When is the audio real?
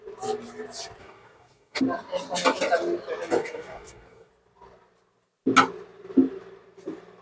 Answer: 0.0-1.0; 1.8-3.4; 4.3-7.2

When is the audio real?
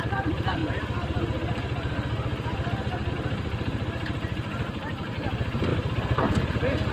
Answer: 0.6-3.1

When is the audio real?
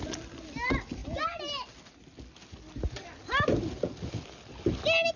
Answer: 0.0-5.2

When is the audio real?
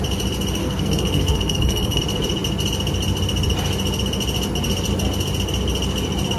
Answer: 0.0-0.6; 2.0-6.4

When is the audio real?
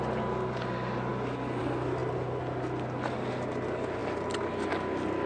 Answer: 0.0-5.3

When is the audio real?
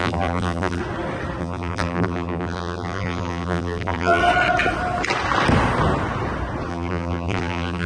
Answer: 0.8-1.4; 4.2-6.7